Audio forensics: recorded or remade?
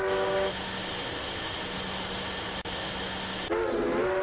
recorded